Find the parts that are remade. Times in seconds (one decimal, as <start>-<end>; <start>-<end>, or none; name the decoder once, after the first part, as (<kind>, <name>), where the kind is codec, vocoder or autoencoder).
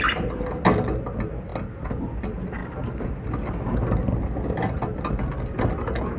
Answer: none